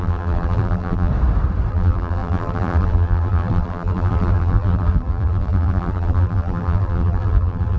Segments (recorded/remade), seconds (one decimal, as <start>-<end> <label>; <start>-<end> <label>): 0.0-1.1 remade; 1.1-1.7 recorded; 1.7-7.8 remade